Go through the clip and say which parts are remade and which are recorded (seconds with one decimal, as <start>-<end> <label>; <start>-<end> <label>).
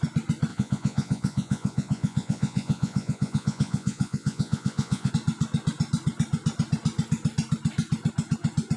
0.0-0.5 recorded; 0.5-5.1 remade; 5.1-8.8 recorded